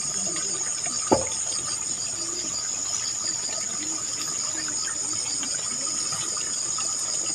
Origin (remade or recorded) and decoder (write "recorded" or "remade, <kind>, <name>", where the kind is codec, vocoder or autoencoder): recorded